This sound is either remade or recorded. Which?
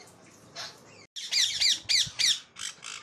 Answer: recorded